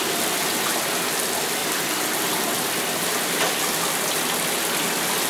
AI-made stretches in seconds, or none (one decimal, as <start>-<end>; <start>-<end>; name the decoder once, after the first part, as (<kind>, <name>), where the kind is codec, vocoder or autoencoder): 1.6-3.6 (vocoder, BigVGAN v2)